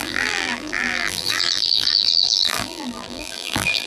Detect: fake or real fake